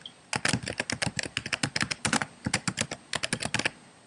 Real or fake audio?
real